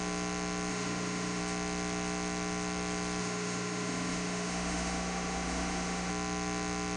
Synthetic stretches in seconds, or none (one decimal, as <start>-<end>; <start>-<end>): 0.7-1.4; 3.2-6.1